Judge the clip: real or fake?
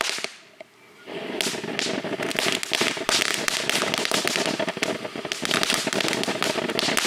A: real